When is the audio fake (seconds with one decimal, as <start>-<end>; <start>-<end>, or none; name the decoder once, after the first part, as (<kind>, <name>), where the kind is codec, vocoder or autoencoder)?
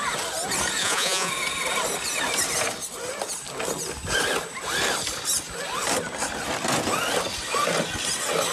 0.8-1.3 (vocoder, Vocos)